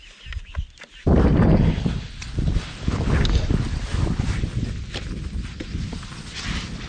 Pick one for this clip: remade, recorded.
recorded